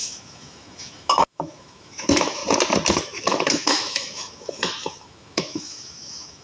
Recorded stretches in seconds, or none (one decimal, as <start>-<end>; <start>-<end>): 2.4-3.0